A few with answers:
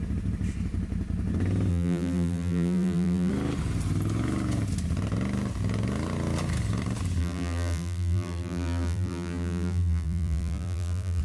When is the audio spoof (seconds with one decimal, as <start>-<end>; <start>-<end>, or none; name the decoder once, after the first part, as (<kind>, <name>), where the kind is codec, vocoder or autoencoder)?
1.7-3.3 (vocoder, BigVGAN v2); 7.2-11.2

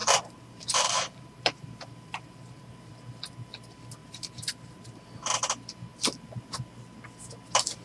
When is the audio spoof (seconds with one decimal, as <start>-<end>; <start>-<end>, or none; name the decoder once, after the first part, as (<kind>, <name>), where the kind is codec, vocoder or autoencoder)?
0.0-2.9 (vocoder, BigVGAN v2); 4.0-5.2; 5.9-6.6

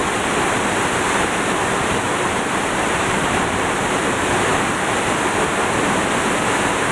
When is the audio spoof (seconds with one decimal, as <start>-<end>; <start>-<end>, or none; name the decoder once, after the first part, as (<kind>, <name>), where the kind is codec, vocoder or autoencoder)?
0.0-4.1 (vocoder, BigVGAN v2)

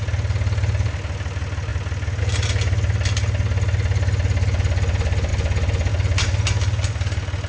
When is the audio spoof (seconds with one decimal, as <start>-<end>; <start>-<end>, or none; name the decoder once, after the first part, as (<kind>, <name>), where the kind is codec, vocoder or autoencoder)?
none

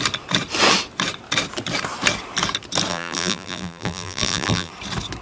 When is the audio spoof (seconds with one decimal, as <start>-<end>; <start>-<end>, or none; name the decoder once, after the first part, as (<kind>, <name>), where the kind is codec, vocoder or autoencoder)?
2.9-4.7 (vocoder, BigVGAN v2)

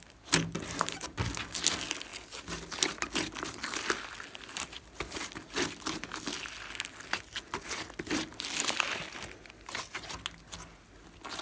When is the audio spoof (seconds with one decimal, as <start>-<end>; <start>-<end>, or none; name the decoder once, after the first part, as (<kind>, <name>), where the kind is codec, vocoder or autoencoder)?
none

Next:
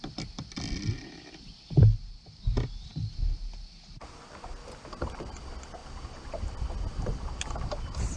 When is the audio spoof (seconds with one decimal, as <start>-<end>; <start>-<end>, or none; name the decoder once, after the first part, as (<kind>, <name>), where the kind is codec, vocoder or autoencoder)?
none